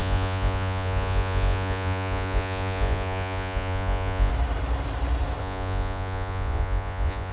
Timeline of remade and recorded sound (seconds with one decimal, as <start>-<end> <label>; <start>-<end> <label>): 0.0-4.3 remade; 4.3-5.4 recorded; 5.4-7.3 remade